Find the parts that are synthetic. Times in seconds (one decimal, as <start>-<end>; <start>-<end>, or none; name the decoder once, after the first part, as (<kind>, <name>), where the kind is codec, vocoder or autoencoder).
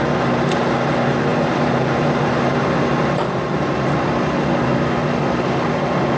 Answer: none